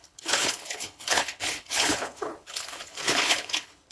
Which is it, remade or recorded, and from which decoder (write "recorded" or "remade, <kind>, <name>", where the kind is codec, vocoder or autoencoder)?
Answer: remade, codec, HILCodec